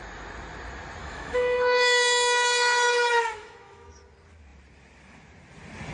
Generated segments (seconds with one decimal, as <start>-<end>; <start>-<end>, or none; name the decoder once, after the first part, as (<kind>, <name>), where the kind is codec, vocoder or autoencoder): 1.0-3.9 (autoencoder, DAC-VAE)